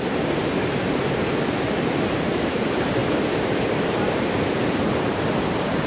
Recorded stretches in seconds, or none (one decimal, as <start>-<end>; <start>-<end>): 1.2-1.8